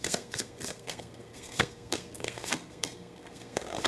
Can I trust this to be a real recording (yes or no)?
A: no